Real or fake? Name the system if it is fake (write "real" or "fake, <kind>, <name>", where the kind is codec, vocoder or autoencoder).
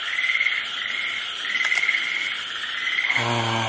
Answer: real